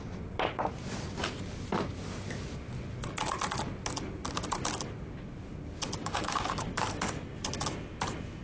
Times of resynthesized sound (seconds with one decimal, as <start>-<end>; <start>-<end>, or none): 6.0-6.7